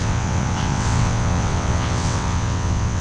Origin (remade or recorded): remade